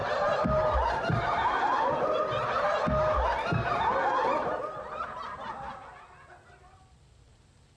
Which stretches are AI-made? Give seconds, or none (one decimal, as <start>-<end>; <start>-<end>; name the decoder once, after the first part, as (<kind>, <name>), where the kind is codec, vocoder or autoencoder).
0.0-2.0 (vocoder, BigVGAN v2)